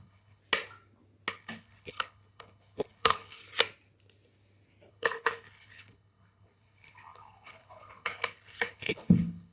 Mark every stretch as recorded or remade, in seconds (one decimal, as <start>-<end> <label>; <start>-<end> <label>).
0.0-0.4 remade; 0.4-1.3 recorded; 1.3-3.4 remade; 3.4-4.9 recorded; 4.9-9.5 remade